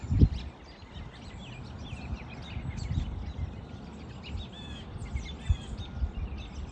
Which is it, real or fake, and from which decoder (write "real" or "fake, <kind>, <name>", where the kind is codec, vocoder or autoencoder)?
real